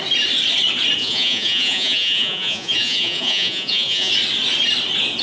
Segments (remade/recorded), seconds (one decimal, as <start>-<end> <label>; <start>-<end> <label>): 0.0-1.0 recorded; 1.0-4.1 remade; 4.1-5.2 recorded